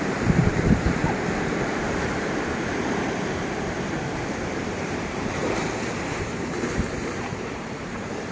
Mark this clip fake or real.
fake